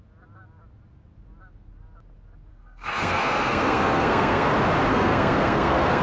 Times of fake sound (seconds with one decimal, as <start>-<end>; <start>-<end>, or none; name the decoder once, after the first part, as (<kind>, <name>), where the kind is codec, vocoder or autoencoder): 2.5-4.5 (codec, SNAC); 4.9-6.0